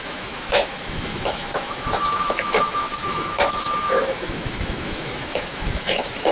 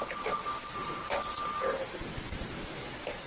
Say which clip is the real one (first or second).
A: second